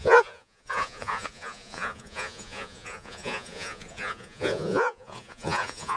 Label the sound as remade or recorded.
remade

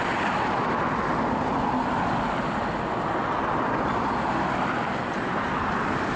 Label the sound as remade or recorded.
recorded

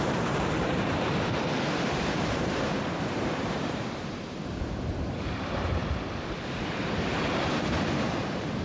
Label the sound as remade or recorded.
remade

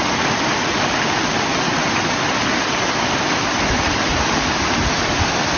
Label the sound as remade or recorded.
recorded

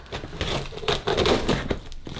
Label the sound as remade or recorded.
recorded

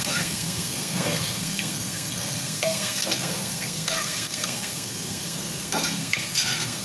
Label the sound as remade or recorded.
remade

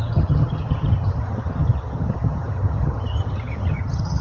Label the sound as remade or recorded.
remade